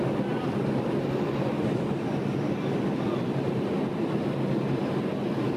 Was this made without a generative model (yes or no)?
yes